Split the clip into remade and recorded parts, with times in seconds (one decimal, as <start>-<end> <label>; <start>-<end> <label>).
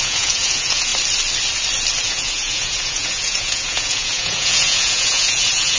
0.0-0.9 remade; 0.9-2.0 recorded; 2.0-5.8 remade